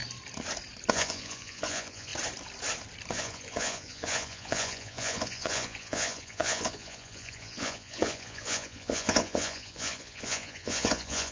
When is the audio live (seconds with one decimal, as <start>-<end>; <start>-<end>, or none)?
0.0-0.9; 2.1-3.2